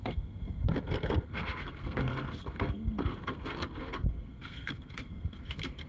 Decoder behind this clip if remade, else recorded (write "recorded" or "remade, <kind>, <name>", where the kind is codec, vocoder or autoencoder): remade, codec, SNAC